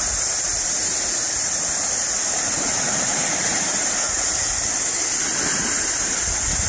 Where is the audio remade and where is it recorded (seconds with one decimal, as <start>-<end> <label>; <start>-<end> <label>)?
0.0-6.7 recorded